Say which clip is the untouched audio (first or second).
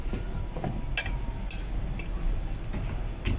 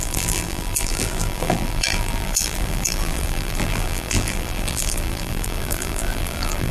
first